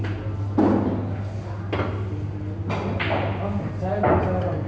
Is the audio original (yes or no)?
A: yes